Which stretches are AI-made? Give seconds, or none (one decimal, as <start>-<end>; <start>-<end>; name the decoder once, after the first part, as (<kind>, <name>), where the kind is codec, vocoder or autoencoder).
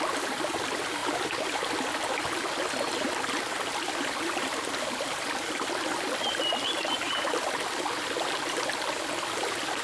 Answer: none